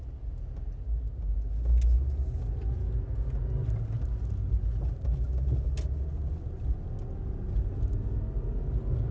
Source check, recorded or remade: recorded